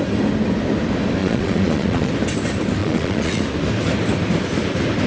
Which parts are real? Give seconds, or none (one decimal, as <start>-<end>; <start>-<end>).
0.0-1.2; 2.1-2.8; 3.4-5.1